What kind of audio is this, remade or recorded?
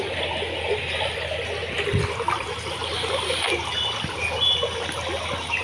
recorded